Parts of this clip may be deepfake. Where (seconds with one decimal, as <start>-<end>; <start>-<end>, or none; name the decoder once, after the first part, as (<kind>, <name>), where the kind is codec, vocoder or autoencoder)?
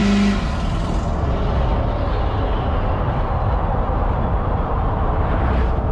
1.7-5.2 (vocoder, BigVGAN v2)